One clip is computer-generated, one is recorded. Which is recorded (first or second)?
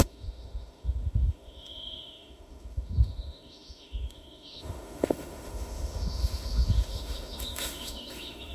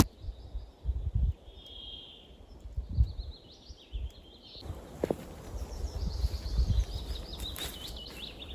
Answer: second